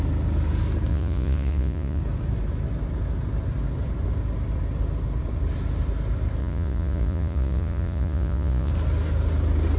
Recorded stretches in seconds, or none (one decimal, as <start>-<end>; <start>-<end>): 0.0-0.9; 2.0-6.4; 8.7-9.8